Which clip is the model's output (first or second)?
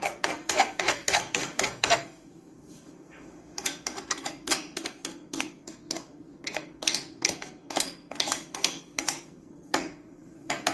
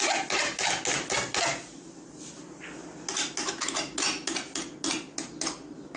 first